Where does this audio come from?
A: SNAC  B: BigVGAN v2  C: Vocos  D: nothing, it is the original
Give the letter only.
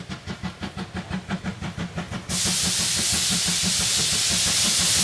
D